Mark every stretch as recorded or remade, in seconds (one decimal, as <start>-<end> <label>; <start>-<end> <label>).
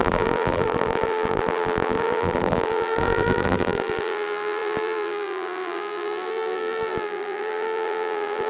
0.0-8.5 remade